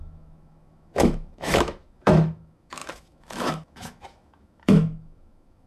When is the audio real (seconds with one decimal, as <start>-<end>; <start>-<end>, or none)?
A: none